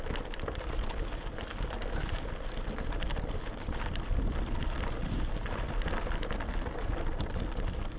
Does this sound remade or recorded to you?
recorded